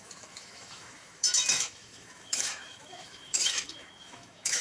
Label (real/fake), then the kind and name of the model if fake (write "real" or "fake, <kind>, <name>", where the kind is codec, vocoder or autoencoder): fake, autoencoder, DAC-VAE